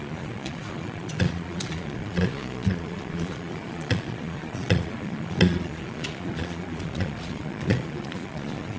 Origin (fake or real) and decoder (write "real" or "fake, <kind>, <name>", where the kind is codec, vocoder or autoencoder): fake, vocoder, Vocos